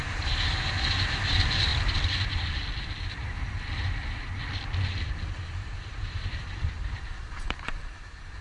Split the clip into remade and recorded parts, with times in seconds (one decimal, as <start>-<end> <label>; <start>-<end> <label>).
0.0-1.7 remade; 1.7-5.1 recorded; 5.1-8.4 remade

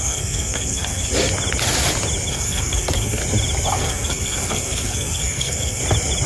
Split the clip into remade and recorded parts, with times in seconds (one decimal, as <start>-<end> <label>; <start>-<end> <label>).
0.0-1.1 remade; 1.1-2.3 recorded; 2.3-3.2 remade; 3.2-3.7 recorded; 3.7-5.8 remade; 5.8-6.3 recorded

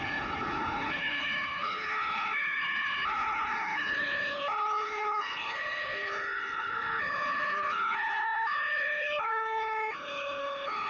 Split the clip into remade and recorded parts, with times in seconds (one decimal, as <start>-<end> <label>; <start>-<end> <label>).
0.0-10.9 remade

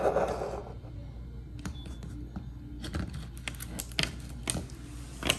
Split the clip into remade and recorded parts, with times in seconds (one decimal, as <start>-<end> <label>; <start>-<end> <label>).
0.0-5.4 recorded

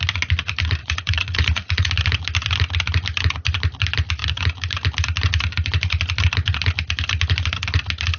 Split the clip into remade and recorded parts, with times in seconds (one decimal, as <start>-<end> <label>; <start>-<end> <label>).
0.0-0.8 recorded; 0.8-1.9 remade; 1.9-8.2 recorded